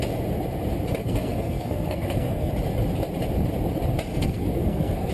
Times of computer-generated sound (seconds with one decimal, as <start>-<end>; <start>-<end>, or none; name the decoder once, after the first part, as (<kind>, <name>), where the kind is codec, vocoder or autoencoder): 1.0-2.5 (codec, SNAC); 4.1-5.1